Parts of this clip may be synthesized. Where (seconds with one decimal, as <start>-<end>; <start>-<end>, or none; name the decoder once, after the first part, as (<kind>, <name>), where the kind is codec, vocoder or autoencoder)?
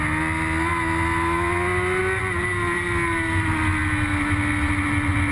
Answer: none